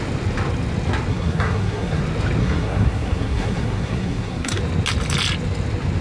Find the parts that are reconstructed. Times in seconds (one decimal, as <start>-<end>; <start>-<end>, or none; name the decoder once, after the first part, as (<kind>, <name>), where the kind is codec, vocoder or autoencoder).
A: 1.1-2.0 (codec, SNAC); 2.4-4.6